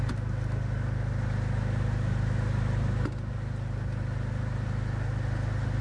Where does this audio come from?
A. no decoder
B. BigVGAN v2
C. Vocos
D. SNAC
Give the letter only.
A